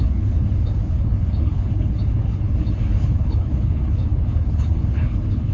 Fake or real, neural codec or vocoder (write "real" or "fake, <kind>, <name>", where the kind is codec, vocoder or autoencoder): fake, codec, HILCodec